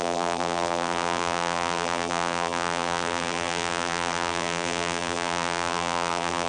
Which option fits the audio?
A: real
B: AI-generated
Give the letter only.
B